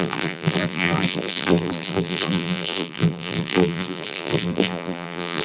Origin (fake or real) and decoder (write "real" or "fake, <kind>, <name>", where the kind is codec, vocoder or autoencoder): fake, vocoder, BigVGAN v2